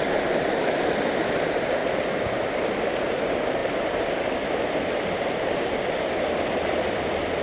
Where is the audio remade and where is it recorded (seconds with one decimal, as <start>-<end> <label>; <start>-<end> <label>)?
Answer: 0.0-1.8 recorded; 1.8-3.2 remade; 3.2-7.4 recorded